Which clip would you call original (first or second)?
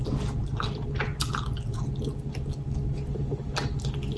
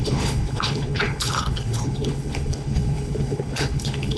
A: first